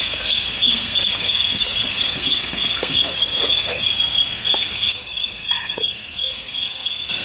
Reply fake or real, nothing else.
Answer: fake